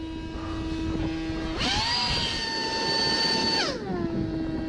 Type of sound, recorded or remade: recorded